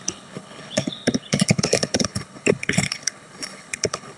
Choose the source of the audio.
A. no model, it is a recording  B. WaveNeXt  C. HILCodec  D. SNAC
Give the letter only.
C